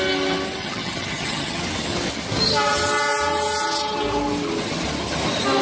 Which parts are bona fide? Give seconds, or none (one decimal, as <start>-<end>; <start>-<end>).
0.0-0.6; 1.6-5.6